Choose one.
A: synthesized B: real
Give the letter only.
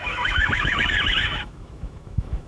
A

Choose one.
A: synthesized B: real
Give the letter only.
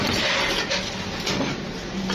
B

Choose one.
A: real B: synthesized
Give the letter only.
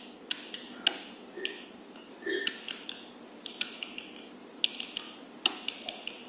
A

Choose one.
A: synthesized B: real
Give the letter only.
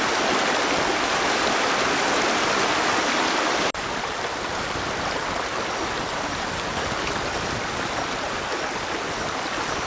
B